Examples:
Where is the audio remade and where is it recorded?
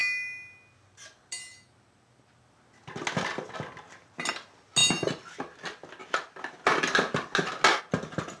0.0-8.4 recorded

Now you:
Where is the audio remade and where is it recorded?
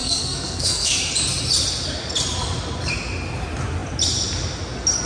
0.0-1.0 remade; 1.0-5.1 recorded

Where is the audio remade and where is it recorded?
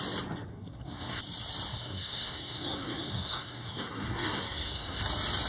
0.0-0.5 recorded; 0.5-1.2 remade; 1.2-1.7 recorded; 1.7-5.0 remade; 5.0-5.5 recorded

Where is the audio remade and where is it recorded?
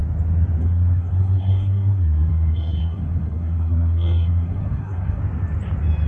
0.0-0.6 recorded; 0.6-5.2 remade; 5.2-6.1 recorded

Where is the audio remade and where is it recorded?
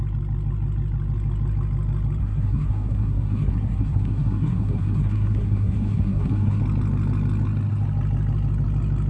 0.0-2.2 recorded; 2.2-6.6 remade; 6.6-9.1 recorded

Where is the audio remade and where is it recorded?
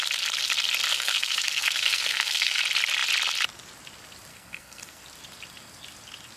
0.0-0.9 recorded; 0.9-2.6 remade; 2.6-4.3 recorded; 4.3-5.0 remade; 5.0-6.4 recorded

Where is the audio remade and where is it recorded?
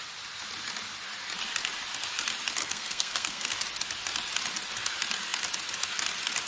0.0-2.6 recorded; 2.6-3.5 remade; 3.5-6.5 recorded